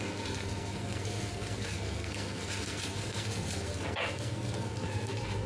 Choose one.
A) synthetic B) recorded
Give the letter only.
A